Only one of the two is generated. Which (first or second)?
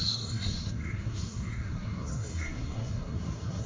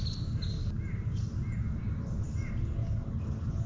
first